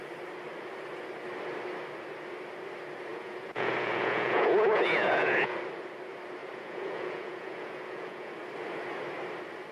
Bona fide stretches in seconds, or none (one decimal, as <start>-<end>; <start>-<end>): 0.0-3.1; 5.6-6.4; 8.3-9.7